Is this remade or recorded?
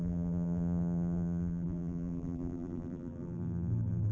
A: remade